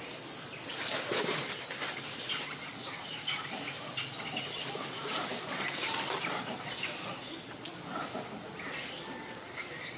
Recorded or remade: recorded